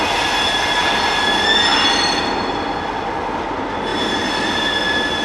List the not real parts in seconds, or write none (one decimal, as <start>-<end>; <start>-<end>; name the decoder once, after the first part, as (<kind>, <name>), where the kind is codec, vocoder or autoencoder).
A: none

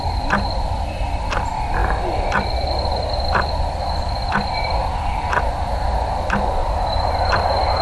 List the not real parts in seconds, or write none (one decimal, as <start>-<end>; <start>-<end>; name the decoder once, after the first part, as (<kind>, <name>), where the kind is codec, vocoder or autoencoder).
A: 6.6-7.1 (vocoder, BigVGAN v2)

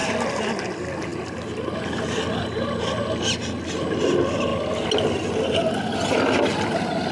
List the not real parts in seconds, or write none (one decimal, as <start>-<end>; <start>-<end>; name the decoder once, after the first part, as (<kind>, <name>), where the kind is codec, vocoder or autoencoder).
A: none

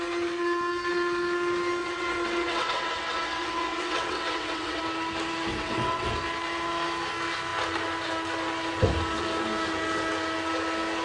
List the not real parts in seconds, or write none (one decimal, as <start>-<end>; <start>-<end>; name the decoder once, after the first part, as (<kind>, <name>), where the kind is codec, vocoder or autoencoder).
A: 1.8-4.8 (vocoder, WaveNeXt); 5.5-6.1